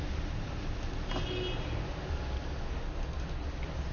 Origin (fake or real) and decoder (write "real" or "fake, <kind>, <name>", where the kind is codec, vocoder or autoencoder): real